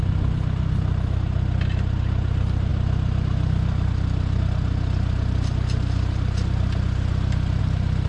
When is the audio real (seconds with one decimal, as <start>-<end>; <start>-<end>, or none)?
0.0-8.1